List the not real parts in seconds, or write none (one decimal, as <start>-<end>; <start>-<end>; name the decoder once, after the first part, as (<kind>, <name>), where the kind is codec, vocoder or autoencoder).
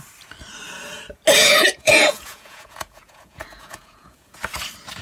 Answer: 1.4-4.4 (vocoder, Vocos)